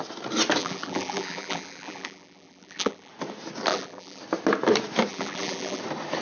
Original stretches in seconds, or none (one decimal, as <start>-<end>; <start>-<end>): 0.0-0.6; 3.1-3.7; 4.2-5.1; 5.8-6.2